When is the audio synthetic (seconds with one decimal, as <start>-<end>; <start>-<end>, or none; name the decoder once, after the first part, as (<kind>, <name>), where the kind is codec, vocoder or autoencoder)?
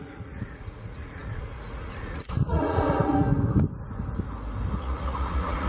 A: 0.0-3.2 (vocoder, Vocos); 4.7-5.7